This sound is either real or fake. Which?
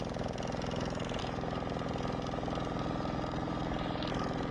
real